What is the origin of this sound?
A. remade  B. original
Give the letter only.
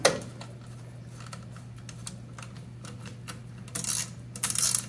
B